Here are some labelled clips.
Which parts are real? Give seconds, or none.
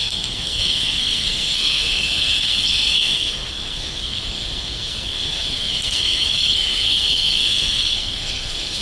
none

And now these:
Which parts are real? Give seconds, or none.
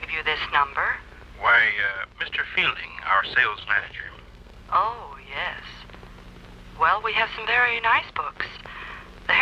0.0-3.6; 4.6-9.4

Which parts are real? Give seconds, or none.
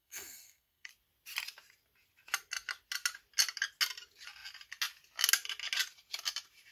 0.9-6.7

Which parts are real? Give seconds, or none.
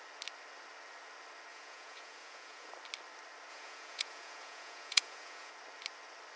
0.0-1.5; 2.7-3.5; 5.5-6.4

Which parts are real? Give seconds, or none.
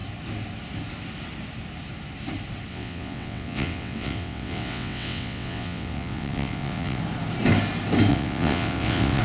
0.0-2.7; 7.0-8.1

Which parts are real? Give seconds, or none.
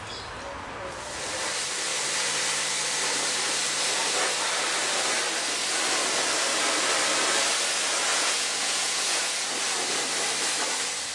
0.0-8.1; 9.3-11.1